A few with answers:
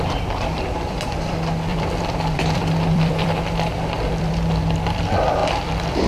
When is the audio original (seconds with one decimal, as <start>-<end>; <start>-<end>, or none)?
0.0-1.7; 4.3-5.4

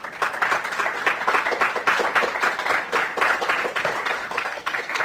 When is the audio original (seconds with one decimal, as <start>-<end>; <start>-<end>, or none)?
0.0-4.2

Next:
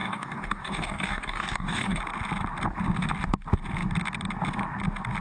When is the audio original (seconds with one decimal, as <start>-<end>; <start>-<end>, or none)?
2.0-5.2